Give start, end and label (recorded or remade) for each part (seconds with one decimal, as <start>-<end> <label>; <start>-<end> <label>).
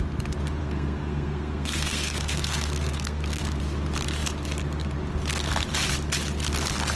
0.0-0.6 recorded; 0.6-3.6 remade; 3.6-7.0 recorded